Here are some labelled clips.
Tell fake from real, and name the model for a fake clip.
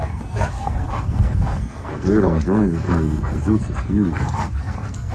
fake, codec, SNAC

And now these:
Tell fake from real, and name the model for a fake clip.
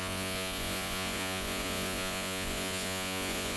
fake, vocoder, Vocos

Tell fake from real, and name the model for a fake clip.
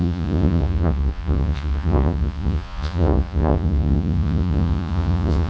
fake, vocoder, Vocos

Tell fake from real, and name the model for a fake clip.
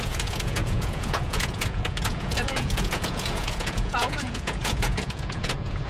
fake, vocoder, Vocos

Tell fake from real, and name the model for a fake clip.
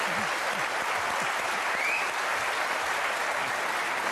real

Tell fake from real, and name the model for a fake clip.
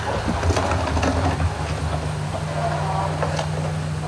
real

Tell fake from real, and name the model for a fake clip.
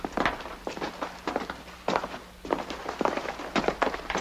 real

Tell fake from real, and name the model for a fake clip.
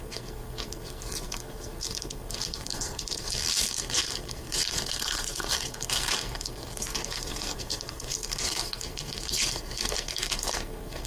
fake, codec, SNAC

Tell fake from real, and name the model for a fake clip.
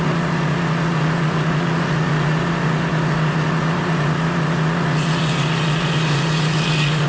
fake, vocoder, Vocos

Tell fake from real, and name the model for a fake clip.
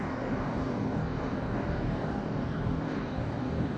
fake, codec, DAC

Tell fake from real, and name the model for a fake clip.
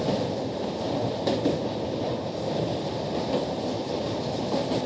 real